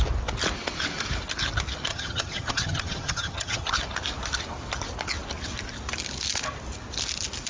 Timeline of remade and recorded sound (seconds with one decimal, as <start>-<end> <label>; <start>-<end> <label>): 0.0-1.9 recorded; 1.9-3.7 remade; 3.7-7.5 recorded